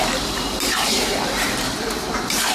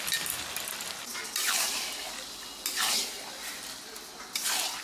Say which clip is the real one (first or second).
second